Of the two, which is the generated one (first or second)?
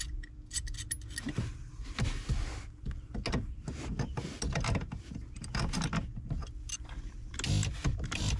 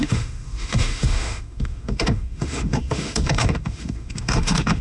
second